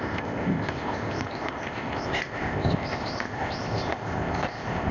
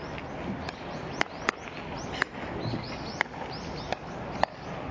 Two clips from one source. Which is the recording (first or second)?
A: second